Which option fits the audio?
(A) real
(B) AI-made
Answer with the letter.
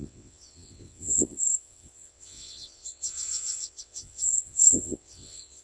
B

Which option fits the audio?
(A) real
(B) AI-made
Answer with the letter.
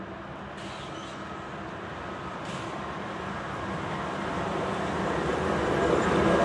A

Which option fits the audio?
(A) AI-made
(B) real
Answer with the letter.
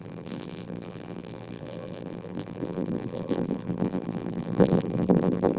A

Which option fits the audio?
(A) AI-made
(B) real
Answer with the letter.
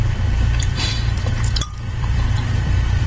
A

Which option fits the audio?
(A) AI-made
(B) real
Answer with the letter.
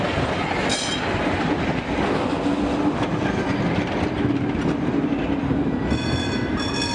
B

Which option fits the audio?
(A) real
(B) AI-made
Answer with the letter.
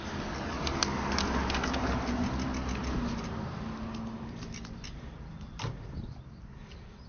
A